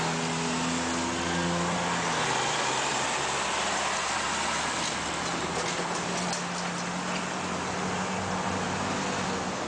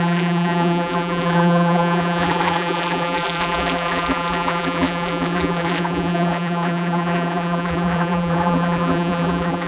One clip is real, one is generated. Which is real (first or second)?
first